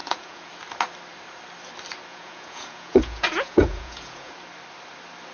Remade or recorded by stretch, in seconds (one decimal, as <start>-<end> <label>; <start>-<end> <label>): 0.0-0.5 remade; 0.5-2.1 recorded; 2.1-4.3 remade; 4.3-5.3 recorded